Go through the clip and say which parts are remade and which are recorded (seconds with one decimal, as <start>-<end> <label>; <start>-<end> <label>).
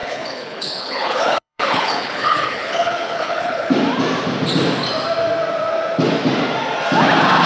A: 0.0-3.7 remade; 3.7-7.5 recorded